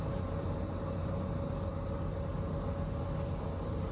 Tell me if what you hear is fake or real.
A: real